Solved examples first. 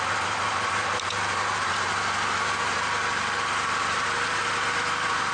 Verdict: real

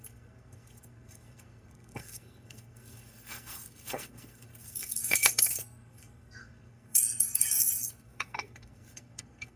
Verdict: fake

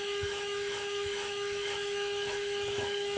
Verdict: fake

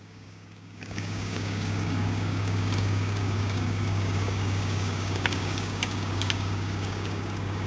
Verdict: fake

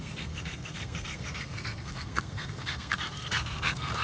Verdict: fake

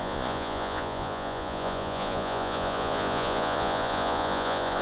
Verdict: fake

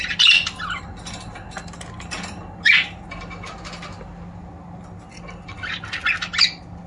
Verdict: real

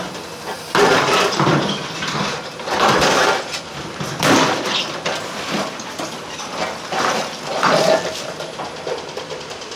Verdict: fake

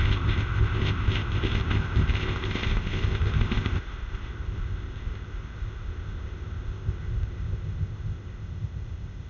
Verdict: fake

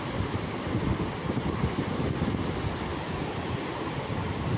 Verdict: real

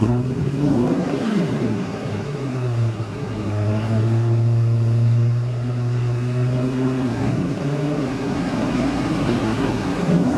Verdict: fake